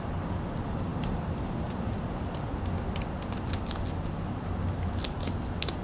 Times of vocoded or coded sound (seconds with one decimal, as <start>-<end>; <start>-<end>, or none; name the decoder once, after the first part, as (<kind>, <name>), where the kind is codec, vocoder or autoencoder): 0.9-3.5 (vocoder, BigVGAN v2)